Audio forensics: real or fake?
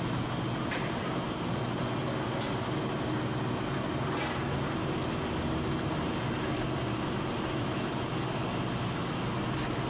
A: real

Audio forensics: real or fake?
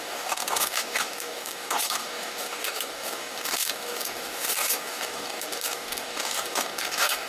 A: fake